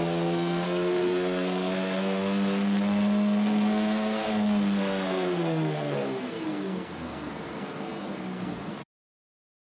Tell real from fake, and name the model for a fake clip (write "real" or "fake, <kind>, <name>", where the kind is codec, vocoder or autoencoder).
fake, codec, SNAC